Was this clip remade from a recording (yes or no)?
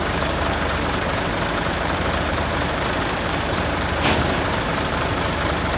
yes